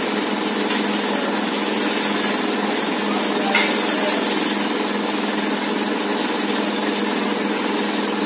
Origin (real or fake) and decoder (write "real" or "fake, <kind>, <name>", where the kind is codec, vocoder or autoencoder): real